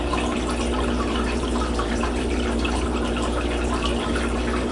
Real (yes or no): no